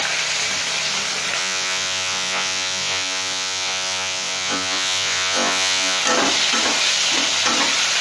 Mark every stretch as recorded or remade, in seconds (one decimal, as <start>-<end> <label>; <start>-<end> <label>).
0.0-1.4 recorded; 1.4-6.0 remade; 6.0-8.0 recorded